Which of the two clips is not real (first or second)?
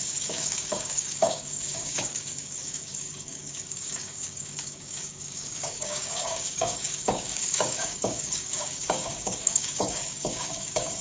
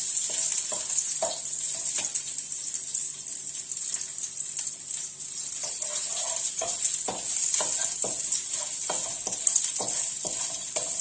first